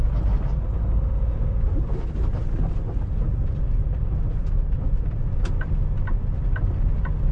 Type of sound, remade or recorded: recorded